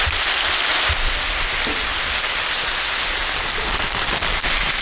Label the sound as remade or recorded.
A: recorded